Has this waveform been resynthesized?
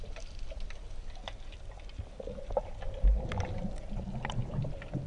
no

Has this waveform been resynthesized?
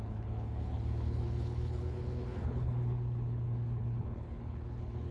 yes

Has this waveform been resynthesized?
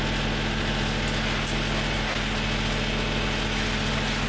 no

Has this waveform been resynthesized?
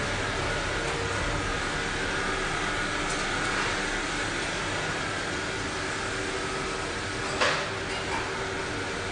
no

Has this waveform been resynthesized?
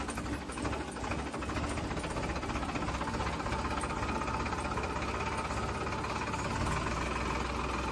no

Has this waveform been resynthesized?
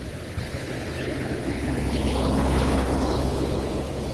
yes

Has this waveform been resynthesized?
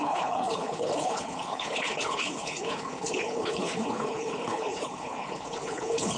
yes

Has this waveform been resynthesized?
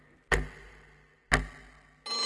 no